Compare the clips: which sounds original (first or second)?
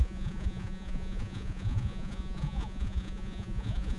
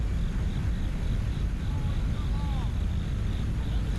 second